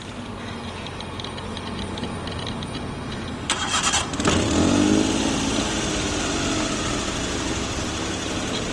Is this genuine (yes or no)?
yes